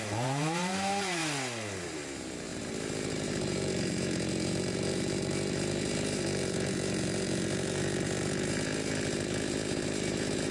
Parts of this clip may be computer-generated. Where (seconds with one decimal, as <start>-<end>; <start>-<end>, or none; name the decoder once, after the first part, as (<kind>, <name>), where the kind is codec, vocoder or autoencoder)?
0.0-1.2 (vocoder, BigVGAN v2); 1.8-10.5